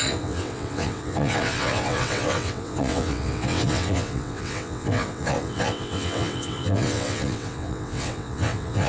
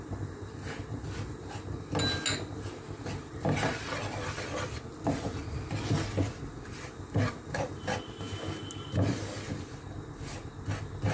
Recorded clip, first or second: second